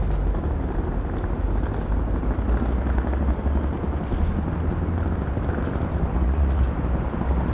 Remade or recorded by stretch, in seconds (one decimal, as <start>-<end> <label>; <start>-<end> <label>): 0.0-6.1 recorded; 6.1-6.6 remade; 6.6-7.5 recorded